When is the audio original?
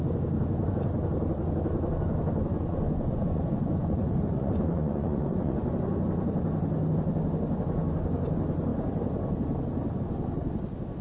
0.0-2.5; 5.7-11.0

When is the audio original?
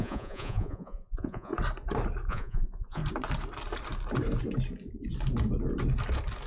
1.5-2.3; 3.0-6.5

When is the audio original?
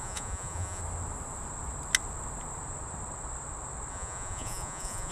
0.8-3.9